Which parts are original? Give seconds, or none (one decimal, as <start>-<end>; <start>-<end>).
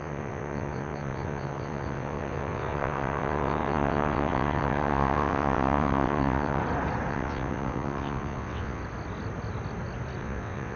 6.6-7.1; 8.8-10.2